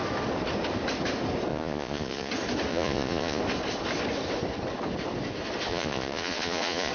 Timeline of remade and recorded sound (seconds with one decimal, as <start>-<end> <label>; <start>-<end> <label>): 0.0-1.5 recorded; 1.5-2.3 remade; 2.3-2.7 recorded; 2.7-3.4 remade; 3.4-5.7 recorded; 5.7-6.9 remade